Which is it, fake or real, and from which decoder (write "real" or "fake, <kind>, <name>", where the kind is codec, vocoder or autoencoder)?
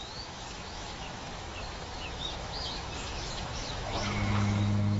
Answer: fake, autoencoder, DAC-VAE